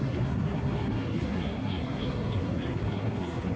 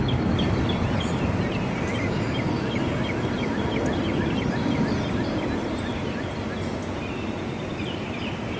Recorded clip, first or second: second